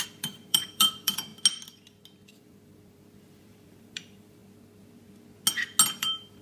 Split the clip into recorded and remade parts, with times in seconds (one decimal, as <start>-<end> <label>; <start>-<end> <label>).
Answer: 0.0-1.3 remade; 1.3-2.3 recorded; 2.3-4.4 remade; 4.4-6.0 recorded; 6.0-6.4 remade